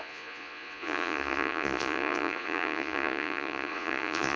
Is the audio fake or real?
fake